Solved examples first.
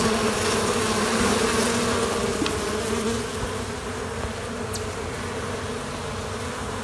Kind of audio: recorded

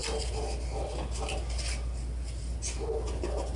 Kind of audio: recorded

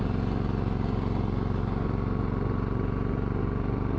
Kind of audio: recorded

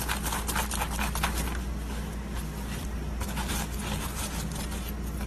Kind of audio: recorded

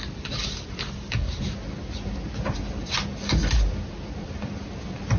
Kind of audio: recorded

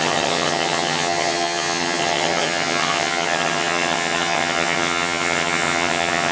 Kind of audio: remade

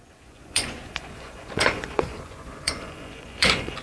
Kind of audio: remade